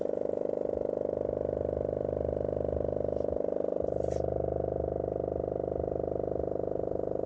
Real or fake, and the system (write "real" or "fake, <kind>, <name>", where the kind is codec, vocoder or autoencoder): real